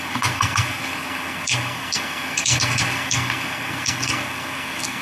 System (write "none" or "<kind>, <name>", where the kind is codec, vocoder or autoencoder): codec, SNAC